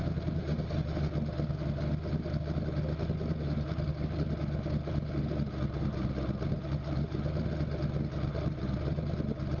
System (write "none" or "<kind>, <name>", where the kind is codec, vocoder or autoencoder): none